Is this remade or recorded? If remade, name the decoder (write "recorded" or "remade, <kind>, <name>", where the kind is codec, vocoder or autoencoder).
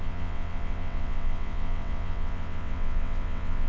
remade, vocoder, WaveNeXt